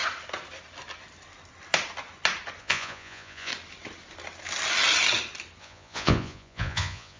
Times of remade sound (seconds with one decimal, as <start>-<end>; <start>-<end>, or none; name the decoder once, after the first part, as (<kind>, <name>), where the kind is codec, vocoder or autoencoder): 2.6-3.5 (vocoder, Vocos); 5.6-7.2